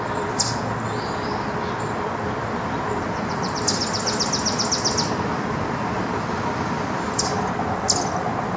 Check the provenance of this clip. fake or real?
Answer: real